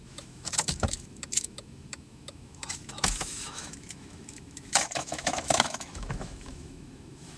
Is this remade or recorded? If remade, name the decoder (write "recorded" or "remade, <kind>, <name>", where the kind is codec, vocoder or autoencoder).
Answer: remade, autoencoder, DAC-VAE